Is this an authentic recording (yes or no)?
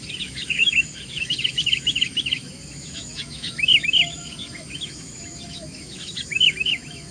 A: no